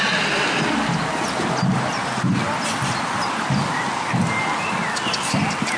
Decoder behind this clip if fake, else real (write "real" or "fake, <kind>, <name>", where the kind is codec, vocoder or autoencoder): real